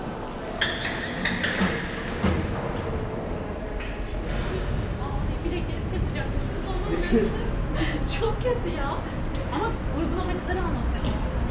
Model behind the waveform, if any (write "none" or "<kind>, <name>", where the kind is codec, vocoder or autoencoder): none